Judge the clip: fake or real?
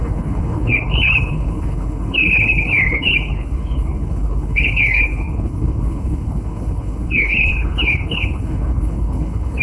fake